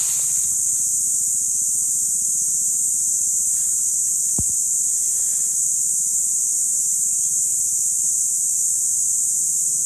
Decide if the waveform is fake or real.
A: real